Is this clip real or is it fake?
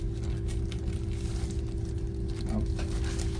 real